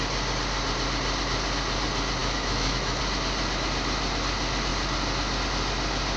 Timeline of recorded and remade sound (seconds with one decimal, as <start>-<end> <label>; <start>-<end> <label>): 0.0-2.2 recorded; 2.2-3.0 remade; 3.0-6.2 recorded